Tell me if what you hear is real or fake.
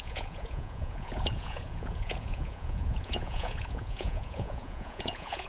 fake